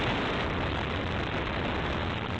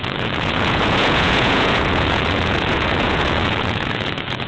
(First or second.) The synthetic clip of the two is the second